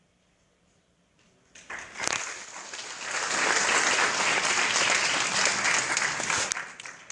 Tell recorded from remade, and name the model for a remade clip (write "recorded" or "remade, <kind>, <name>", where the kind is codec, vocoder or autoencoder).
recorded